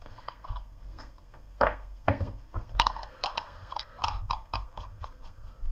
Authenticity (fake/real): fake